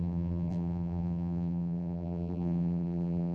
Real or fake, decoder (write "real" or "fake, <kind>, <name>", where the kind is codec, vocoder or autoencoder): fake, vocoder, BigVGAN v2